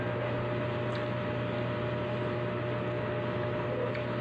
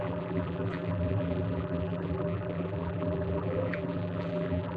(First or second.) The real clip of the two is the first